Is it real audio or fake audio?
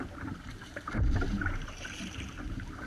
fake